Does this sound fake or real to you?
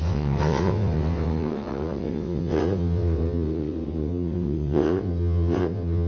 fake